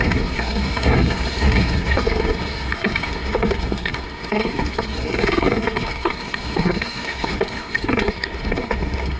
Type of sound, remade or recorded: remade